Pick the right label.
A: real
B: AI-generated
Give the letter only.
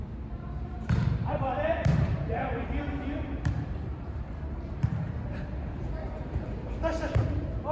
B